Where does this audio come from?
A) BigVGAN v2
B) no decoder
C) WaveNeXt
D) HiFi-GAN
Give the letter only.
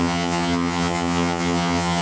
D